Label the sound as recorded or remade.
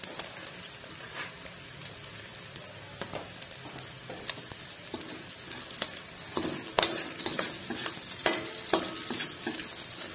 recorded